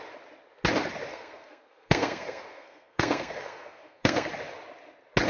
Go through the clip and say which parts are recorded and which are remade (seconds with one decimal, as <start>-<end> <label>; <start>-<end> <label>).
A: 0.0-1.1 recorded; 1.1-4.3 remade; 4.3-5.3 recorded

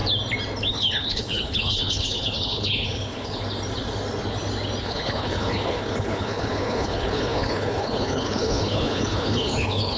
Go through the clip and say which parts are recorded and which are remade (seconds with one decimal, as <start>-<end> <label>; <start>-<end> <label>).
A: 0.0-0.7 recorded; 0.7-3.4 remade; 3.4-4.8 recorded; 4.8-10.0 remade

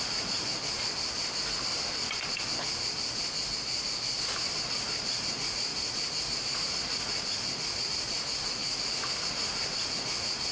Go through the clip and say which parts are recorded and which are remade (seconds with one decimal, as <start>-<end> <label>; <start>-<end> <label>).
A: 0.0-0.6 remade; 0.6-4.7 recorded; 4.7-10.5 remade

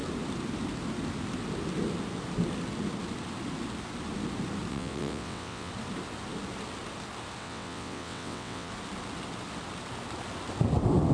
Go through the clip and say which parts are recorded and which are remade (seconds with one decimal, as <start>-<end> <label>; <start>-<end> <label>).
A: 0.0-4.7 recorded; 4.7-5.7 remade; 5.7-7.4 recorded; 7.4-8.7 remade; 8.7-11.1 recorded

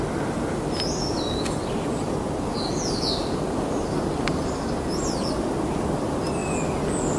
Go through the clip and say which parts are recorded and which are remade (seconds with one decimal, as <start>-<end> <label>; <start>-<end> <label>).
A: 0.0-7.2 recorded

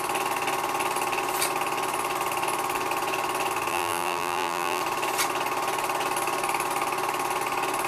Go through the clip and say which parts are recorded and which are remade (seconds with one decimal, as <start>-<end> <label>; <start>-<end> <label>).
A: 0.0-3.7 recorded; 3.7-4.8 remade; 4.8-7.9 recorded

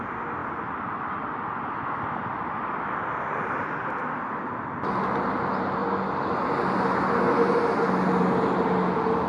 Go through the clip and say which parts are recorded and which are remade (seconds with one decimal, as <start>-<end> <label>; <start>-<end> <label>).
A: 0.0-9.3 recorded

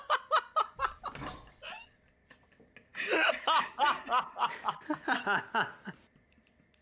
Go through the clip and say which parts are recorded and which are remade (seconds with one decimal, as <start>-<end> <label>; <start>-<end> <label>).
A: 0.0-6.8 recorded